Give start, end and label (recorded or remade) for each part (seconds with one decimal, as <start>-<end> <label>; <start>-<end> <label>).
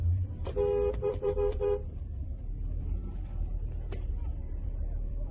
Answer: 0.0-0.9 recorded; 0.9-2.3 remade; 2.3-4.4 recorded; 4.4-5.3 remade